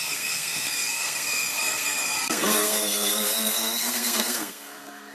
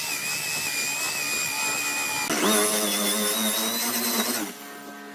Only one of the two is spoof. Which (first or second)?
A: first